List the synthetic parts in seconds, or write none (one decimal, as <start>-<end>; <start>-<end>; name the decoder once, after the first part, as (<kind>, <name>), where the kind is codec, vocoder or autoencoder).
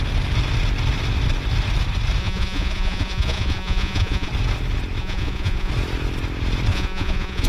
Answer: 2.2-4.3 (vocoder, Vocos); 5.0-5.7; 6.7-7.5